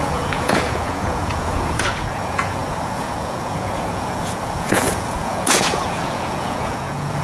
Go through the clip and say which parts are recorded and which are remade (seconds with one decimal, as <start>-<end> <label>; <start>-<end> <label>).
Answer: 0.0-7.2 remade